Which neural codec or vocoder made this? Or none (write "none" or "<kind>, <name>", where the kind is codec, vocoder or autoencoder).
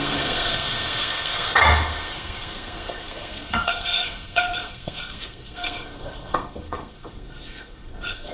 codec, SNAC